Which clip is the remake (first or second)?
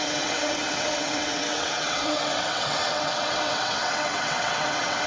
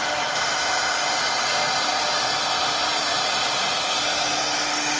first